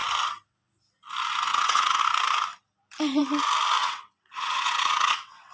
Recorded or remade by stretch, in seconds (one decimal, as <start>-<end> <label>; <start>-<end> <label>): 0.0-1.5 recorded; 1.5-2.0 remade; 2.0-3.8 recorded; 3.8-5.5 remade

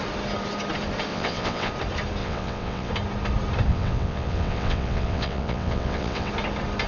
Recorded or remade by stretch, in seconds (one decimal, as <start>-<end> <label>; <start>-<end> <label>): 0.0-1.1 recorded; 1.1-1.7 remade; 1.7-2.2 recorded; 2.2-2.9 remade; 2.9-3.7 recorded; 3.7-6.3 remade; 6.3-6.9 recorded

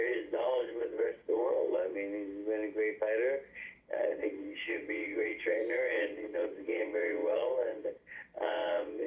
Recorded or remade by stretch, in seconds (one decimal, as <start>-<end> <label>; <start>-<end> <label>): 0.0-1.8 remade; 1.8-3.7 recorded; 3.7-9.1 remade